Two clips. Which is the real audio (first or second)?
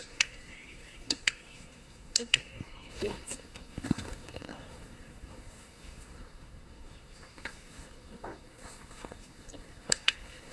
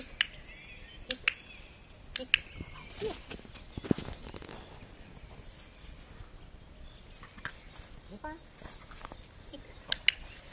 second